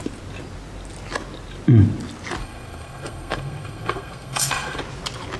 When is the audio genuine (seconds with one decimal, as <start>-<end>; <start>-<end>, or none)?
0.0-2.4; 4.8-5.4